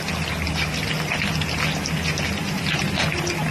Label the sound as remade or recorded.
recorded